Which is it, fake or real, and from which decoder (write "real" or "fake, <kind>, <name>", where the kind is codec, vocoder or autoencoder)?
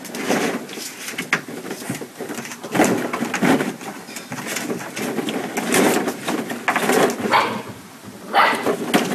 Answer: real